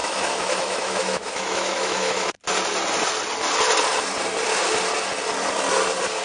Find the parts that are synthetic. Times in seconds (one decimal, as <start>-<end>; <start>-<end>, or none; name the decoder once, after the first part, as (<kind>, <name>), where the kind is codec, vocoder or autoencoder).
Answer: 0.0-2.4 (autoencoder, DAC-VAE)